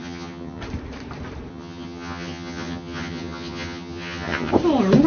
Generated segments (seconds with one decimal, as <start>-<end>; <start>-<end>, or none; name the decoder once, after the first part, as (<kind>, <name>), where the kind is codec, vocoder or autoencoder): 0.0-0.6 (vocoder, HiFi-GAN); 1.5-4.5